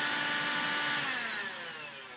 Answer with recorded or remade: recorded